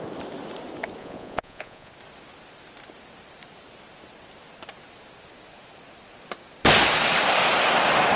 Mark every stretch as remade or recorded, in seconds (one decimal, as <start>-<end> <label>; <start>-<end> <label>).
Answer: 0.0-1.0 recorded; 1.0-1.9 remade; 1.9-8.2 recorded